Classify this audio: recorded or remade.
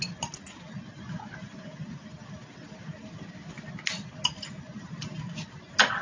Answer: recorded